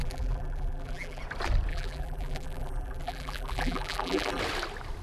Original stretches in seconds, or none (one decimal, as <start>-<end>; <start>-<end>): 1.2-1.7; 4.4-5.0